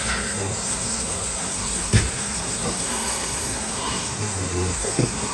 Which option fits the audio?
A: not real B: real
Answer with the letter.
A